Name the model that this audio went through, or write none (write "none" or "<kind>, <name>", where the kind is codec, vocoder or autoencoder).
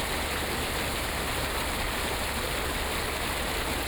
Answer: none